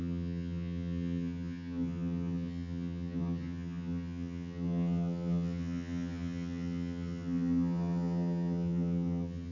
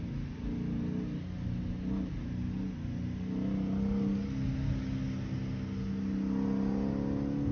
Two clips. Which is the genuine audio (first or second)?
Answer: second